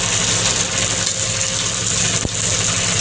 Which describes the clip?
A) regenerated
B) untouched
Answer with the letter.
B